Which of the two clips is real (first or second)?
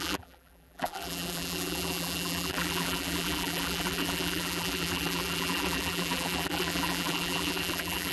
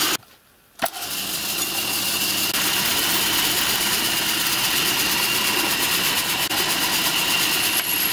second